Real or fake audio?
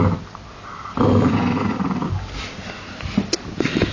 real